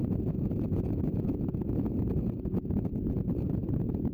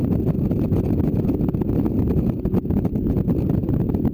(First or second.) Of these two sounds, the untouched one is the second